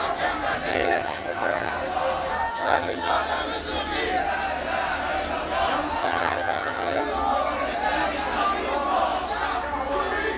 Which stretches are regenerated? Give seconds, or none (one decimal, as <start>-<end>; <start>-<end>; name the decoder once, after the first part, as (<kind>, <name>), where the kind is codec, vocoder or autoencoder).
0.7-1.7 (vocoder, HiFi-GAN); 2.5-3.1; 6.0-7.0